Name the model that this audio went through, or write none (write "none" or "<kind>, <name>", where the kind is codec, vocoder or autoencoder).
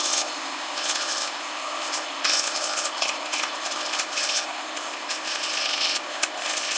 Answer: codec, ZipCodec